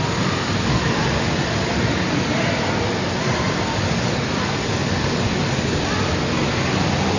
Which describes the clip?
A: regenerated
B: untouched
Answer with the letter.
B